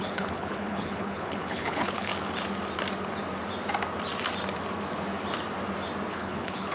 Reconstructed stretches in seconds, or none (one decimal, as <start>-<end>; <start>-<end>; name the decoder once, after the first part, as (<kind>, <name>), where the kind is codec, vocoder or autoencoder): 0.0-2.1 (codec, HILCodec); 6.1-6.7